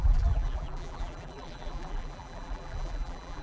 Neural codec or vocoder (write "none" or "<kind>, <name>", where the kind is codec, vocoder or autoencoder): vocoder, BigVGAN v2